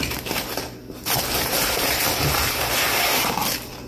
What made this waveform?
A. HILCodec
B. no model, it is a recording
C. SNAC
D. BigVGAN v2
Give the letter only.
D